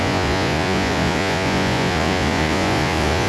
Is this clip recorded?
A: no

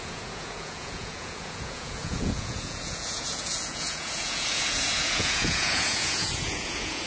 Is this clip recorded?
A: no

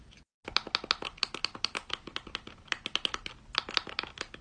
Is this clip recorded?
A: yes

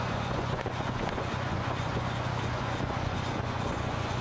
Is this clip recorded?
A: no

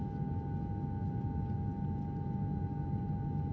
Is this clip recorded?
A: yes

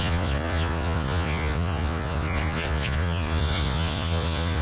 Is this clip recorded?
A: no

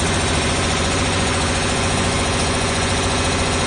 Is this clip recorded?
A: no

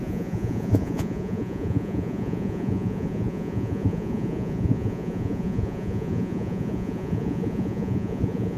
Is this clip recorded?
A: no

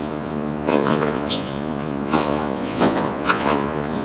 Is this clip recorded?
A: no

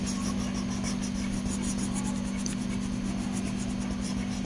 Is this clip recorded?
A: yes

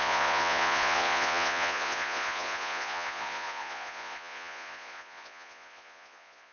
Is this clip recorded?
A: no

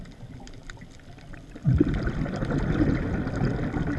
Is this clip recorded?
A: yes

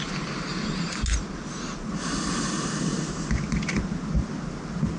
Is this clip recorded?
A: yes